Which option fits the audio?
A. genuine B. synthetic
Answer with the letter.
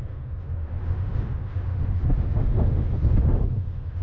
B